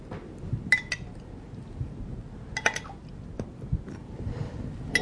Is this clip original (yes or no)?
yes